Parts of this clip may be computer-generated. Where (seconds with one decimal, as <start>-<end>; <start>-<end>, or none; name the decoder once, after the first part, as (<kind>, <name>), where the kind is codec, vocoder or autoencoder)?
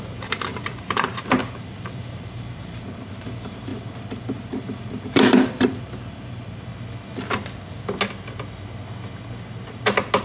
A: 0.0-6.7 (vocoder, BigVGAN v2)